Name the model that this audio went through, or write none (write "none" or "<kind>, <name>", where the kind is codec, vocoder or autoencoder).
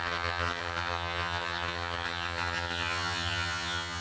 vocoder, HiFi-GAN